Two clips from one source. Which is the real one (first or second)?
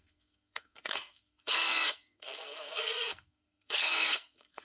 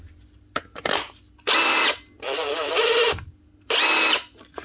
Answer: second